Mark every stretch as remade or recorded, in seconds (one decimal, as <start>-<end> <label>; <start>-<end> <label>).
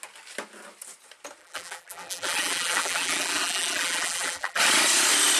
0.0-1.4 recorded; 1.4-4.6 remade; 4.6-5.4 recorded